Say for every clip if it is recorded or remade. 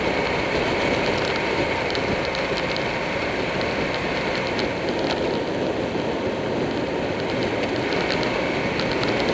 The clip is recorded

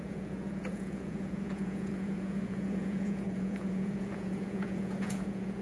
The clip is remade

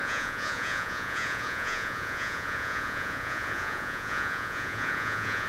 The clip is remade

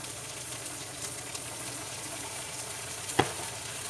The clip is remade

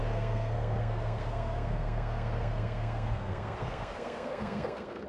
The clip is remade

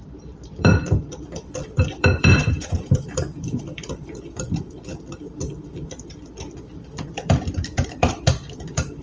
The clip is remade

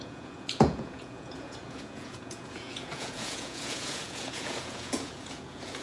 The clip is remade